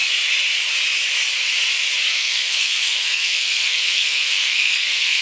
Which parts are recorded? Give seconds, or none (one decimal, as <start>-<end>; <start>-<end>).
0.0-2.1